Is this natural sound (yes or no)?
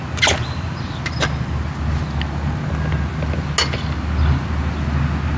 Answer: yes